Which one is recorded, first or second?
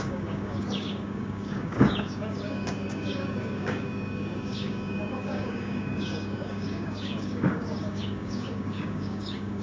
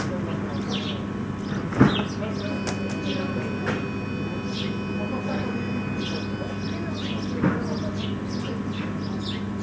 second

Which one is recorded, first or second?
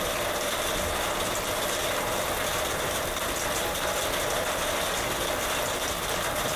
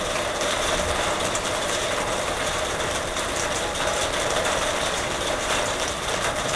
first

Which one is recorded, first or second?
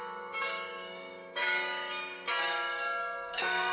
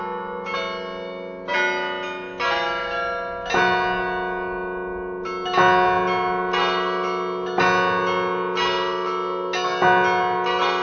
second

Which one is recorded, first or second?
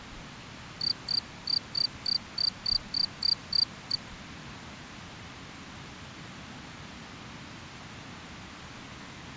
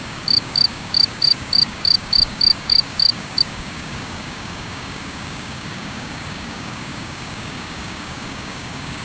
first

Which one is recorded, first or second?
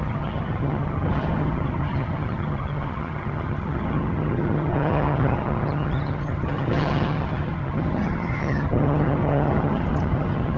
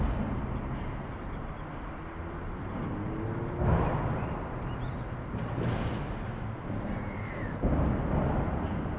second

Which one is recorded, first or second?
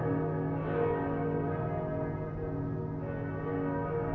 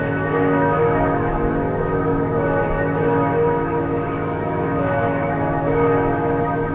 first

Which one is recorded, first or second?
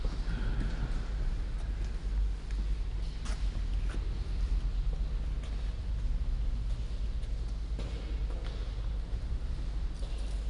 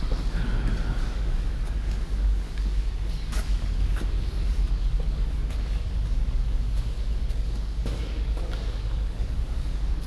first